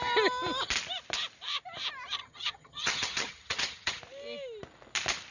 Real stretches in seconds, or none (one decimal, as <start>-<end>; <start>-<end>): 0.0-2.2; 4.0-5.3